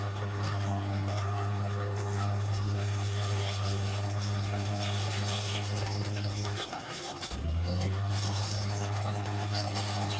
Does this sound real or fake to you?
fake